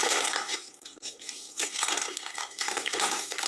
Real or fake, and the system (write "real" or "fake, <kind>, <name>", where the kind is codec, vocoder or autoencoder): fake, codec, SNAC